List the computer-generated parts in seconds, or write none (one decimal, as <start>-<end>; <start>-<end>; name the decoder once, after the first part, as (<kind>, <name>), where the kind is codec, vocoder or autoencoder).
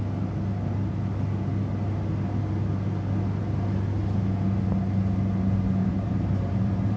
5.8-7.0 (vocoder, BigVGAN v2)